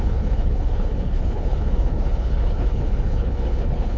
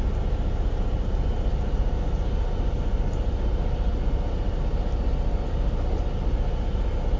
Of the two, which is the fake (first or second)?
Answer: first